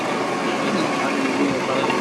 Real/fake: real